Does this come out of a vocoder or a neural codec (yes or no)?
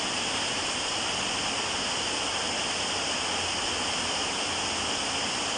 no